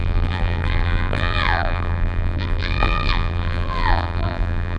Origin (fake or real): fake